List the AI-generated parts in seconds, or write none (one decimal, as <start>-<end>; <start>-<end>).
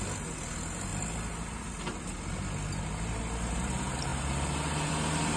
none